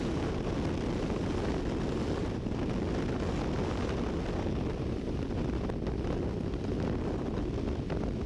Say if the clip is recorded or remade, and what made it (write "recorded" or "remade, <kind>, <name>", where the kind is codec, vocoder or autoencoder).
recorded